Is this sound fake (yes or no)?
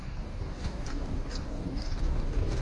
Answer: yes